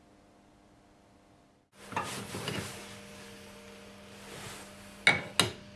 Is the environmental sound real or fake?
real